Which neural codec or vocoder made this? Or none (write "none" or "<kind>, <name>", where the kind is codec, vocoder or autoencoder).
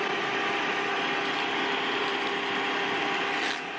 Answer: none